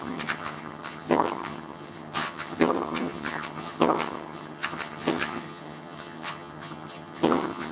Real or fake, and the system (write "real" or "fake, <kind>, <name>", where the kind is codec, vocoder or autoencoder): fake, vocoder, HiFi-GAN